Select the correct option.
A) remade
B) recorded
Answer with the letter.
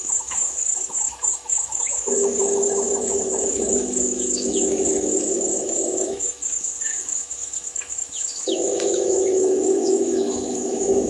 A